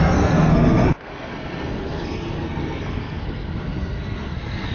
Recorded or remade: remade